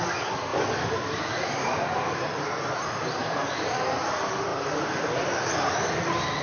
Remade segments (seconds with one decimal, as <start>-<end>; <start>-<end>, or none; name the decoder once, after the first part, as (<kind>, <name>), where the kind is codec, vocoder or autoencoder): none